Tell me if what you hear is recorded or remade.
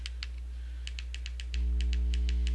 recorded